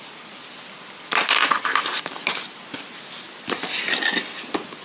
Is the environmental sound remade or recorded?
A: recorded